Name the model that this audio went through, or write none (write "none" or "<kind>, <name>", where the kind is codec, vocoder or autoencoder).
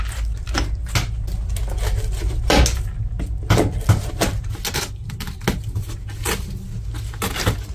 none